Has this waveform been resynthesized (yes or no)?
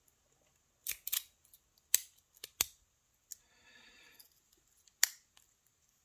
no